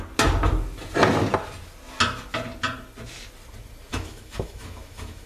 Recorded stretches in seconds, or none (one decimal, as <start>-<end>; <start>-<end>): 0.0-3.9